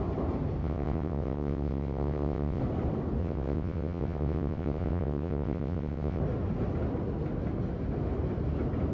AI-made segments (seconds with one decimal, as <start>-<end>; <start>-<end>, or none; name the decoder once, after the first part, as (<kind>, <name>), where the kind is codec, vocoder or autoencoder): 0.6-2.6 (vocoder, WaveNeXt); 3.2-6.2